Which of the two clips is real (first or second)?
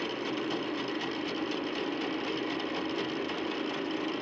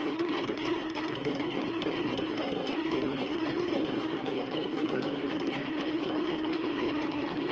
first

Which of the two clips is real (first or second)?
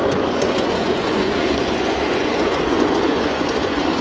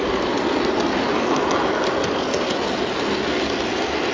second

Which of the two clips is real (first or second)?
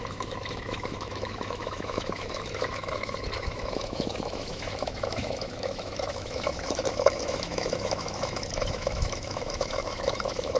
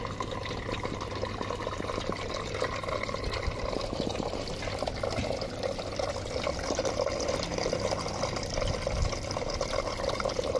second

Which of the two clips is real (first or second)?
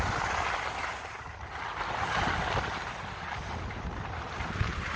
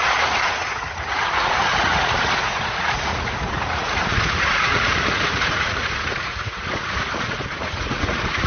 first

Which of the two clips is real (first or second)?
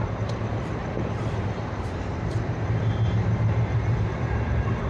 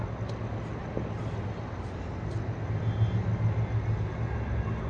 second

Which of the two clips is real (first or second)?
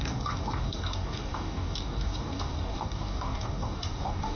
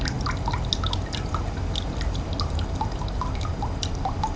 second